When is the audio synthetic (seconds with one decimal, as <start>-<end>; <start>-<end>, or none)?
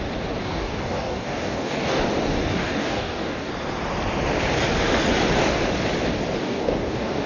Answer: 0.4-2.0; 2.5-3.5; 6.4-7.3